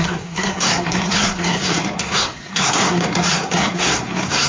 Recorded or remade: remade